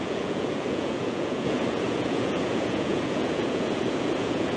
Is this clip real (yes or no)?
no